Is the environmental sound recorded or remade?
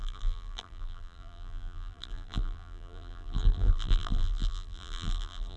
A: remade